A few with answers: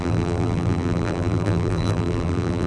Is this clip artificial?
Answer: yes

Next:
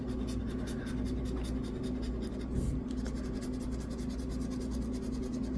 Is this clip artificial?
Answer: no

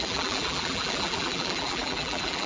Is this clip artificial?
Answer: yes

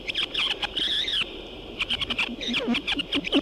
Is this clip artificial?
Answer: yes